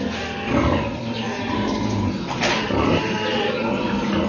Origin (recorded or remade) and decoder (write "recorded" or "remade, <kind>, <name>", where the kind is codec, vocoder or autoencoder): recorded